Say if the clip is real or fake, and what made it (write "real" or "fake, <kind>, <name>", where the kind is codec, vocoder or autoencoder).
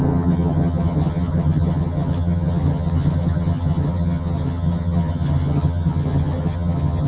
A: fake, vocoder, HiFi-GAN